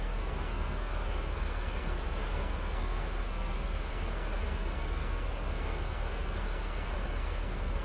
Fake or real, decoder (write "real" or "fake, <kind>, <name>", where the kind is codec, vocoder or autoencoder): fake, codec, SNAC